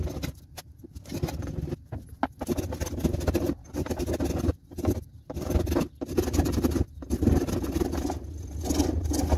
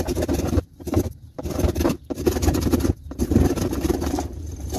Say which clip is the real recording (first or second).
first